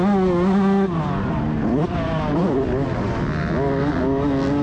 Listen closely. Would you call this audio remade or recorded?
recorded